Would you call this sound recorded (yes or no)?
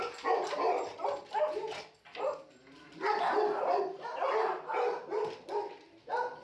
yes